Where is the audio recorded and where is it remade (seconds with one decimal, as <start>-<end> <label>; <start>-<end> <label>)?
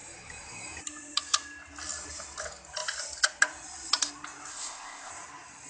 0.0-4.5 recorded; 4.5-5.1 remade; 5.1-5.7 recorded